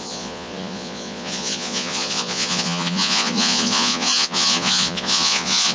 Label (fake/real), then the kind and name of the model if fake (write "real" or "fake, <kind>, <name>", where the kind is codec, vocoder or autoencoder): fake, vocoder, Vocos